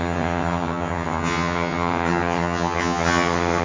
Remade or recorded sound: remade